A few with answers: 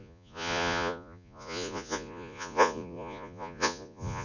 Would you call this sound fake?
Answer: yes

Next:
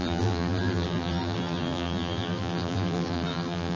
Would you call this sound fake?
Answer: yes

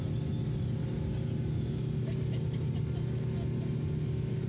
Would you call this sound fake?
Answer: no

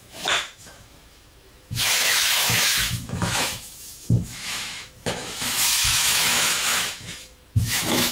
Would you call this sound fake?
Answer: yes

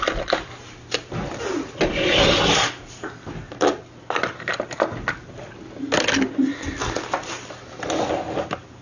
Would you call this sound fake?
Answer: no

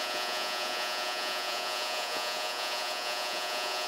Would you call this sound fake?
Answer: yes